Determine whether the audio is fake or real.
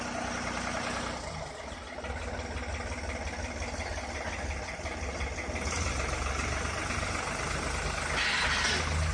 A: real